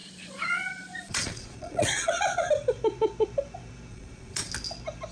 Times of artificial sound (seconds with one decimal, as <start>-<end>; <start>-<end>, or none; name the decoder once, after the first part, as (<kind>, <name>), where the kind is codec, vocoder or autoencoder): 0.0-2.5 (vocoder, Vocos); 3.9-4.5

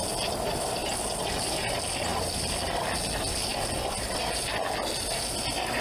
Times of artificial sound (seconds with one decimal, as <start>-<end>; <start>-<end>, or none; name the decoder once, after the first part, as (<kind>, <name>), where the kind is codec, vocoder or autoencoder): none

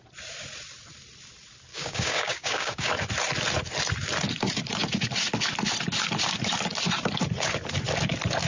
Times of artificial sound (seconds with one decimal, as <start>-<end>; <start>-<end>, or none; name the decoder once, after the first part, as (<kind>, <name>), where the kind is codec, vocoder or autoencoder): 1.7-2.9 (codec, DAC)

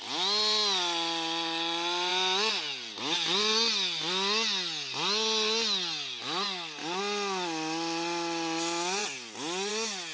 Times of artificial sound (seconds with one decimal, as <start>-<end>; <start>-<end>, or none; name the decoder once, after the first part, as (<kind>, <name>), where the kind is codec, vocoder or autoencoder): none